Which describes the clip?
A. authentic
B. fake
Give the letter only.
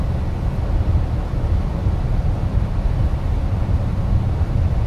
A